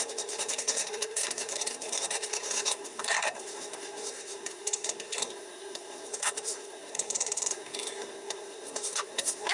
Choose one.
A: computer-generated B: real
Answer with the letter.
A